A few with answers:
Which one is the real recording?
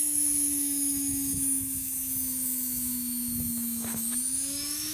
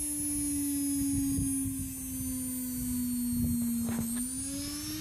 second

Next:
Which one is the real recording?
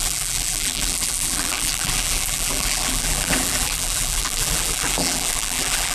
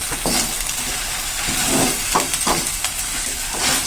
second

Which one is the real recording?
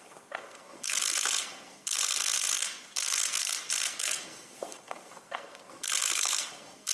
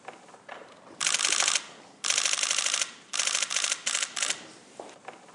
second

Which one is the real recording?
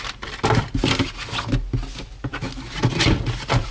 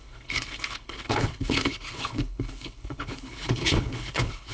first